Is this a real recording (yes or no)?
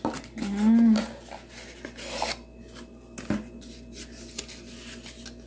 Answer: yes